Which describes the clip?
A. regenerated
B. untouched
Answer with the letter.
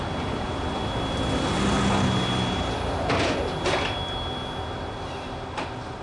B